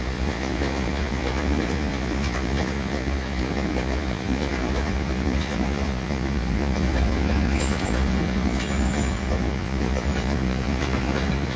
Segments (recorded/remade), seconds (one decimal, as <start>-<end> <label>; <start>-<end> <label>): 0.0-11.6 remade